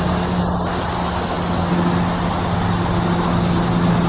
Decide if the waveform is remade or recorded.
recorded